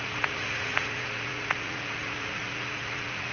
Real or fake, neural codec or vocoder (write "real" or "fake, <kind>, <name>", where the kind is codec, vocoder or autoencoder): fake, vocoder, Vocos